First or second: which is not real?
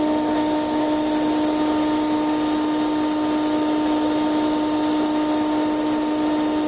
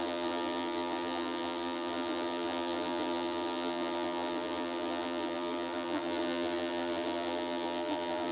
second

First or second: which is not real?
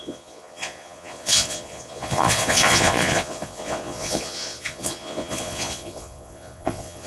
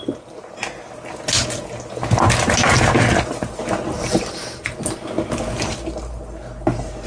first